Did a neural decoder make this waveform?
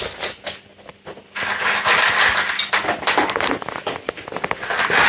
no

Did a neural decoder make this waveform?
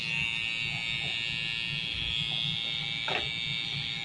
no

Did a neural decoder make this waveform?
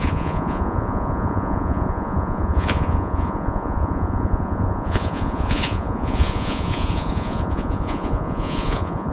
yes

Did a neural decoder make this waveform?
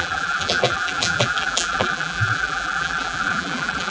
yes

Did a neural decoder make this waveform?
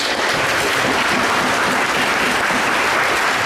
no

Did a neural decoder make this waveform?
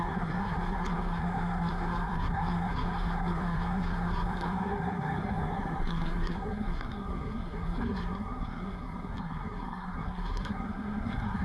yes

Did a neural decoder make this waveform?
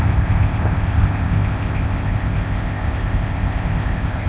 yes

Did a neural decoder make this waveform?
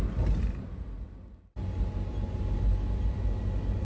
no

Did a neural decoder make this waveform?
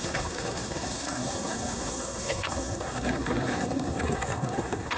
yes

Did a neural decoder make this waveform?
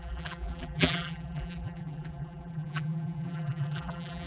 yes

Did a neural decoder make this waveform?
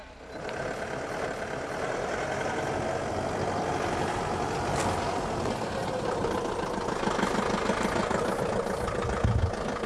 no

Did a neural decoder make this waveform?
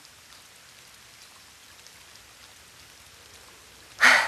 no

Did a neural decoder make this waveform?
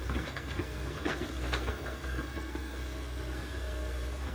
yes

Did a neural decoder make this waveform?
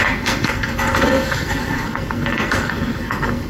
yes